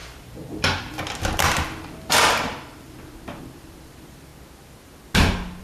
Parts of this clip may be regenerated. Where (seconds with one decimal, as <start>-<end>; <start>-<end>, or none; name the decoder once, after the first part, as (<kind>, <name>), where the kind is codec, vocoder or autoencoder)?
0.0-4.3 (vocoder, BigVGAN v2)